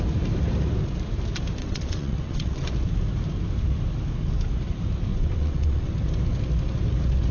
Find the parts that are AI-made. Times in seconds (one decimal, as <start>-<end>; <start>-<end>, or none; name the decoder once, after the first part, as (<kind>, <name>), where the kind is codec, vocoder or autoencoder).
1.6-2.7 (vocoder, WaveNeXt); 5.1-5.9

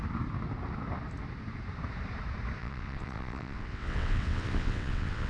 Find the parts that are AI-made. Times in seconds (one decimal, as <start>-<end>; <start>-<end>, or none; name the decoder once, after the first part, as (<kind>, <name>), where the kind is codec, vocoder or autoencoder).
2.6-5.3 (vocoder, WaveNeXt)

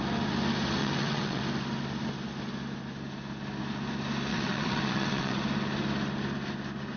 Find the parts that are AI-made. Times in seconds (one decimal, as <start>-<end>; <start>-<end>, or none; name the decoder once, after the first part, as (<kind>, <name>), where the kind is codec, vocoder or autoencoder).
0.8-1.4 (vocoder, WaveNeXt); 4.3-5.4

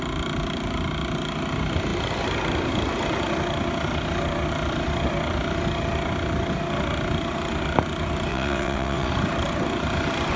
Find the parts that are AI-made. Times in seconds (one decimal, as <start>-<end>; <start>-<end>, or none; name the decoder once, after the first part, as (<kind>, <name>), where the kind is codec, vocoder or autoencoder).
8.3-9.1 (vocoder, WaveNeXt)

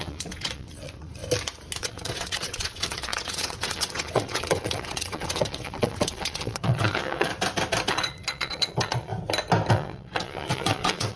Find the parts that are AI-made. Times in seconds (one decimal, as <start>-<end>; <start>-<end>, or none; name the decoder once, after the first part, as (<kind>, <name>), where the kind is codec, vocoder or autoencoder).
0.0-1.2 (vocoder, WaveNeXt); 1.8-7.3; 7.9-9.1; 9.7-11.2

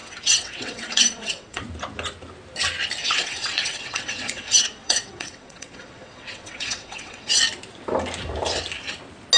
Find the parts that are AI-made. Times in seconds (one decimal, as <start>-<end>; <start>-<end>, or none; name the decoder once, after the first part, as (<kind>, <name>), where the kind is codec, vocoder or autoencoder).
0.0-1.6 (vocoder, WaveNeXt); 3.0-7.4

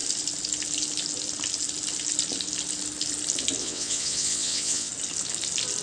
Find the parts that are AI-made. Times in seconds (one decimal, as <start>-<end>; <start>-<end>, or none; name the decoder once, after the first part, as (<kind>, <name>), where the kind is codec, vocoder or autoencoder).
3.6-4.9 (vocoder, WaveNeXt)

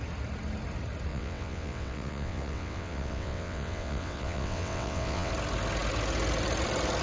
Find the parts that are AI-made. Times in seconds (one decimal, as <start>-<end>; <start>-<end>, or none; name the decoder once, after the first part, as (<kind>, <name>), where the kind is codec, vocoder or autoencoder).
1.1-5.3 (vocoder, WaveNeXt)